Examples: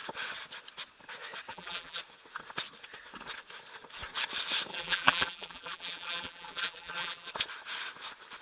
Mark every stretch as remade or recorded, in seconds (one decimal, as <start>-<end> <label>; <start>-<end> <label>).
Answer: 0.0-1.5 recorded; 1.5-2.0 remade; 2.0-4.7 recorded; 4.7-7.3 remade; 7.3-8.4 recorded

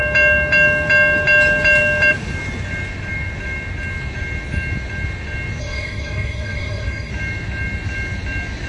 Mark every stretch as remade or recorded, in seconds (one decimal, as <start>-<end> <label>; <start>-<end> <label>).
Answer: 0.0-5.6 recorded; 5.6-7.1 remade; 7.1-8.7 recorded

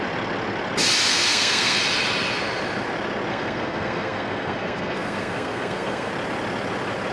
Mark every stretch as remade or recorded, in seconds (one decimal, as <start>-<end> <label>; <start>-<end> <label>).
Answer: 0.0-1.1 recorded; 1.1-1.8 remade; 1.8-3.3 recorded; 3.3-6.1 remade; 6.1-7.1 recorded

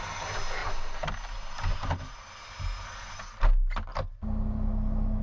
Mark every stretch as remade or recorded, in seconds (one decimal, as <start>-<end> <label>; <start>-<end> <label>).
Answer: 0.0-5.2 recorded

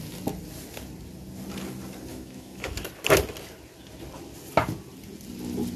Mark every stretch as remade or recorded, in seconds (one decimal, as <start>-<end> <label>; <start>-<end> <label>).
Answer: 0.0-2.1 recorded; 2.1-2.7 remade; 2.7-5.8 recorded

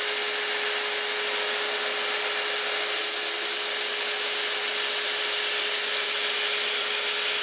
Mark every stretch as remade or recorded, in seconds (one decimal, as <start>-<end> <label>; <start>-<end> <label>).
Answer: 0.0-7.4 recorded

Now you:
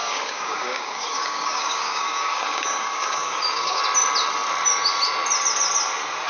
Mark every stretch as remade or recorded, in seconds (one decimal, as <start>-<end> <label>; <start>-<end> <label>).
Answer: 0.0-3.8 remade; 3.8-6.3 recorded